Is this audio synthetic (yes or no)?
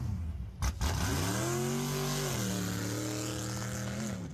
no